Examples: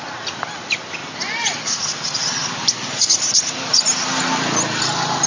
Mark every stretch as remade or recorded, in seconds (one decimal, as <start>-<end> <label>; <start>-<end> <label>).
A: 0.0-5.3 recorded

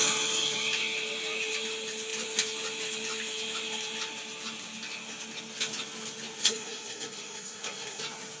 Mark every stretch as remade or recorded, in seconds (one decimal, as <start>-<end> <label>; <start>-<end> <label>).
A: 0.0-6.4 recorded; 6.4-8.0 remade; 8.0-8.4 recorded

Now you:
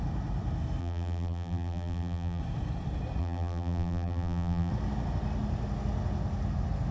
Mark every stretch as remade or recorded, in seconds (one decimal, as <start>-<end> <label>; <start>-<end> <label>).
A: 0.0-0.8 recorded; 0.8-2.4 remade; 2.4-3.2 recorded; 3.2-4.7 remade; 4.7-6.9 recorded

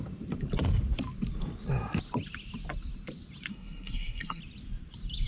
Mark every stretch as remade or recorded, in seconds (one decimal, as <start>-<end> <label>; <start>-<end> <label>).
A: 0.0-3.5 recorded; 3.5-4.4 remade; 4.4-5.3 recorded